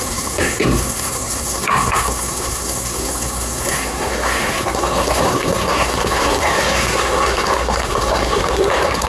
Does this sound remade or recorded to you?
remade